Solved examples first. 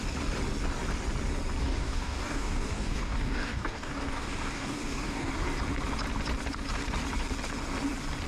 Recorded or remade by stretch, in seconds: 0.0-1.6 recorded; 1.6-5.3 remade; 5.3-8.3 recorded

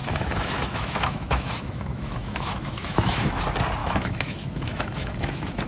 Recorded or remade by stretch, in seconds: 0.0-3.4 remade; 3.4-3.8 recorded; 3.8-5.7 remade

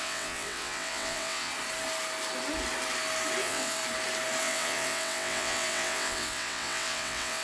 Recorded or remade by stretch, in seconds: 0.0-1.5 remade; 1.5-3.4 recorded; 3.4-3.8 remade; 3.8-4.4 recorded; 4.4-7.4 remade

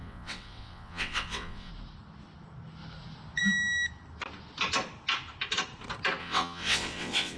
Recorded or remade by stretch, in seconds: 0.0-1.7 remade; 1.7-6.2 recorded; 6.2-7.4 remade